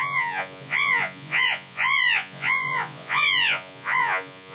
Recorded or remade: remade